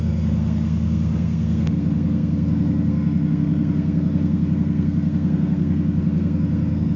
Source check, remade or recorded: remade